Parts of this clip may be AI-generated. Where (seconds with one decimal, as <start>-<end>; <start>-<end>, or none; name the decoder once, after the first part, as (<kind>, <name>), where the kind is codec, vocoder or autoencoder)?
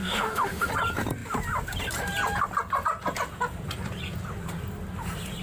0.0-0.7 (autoencoder, DAC-VAE)